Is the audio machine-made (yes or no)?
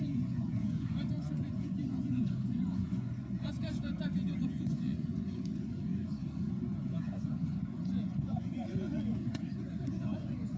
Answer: yes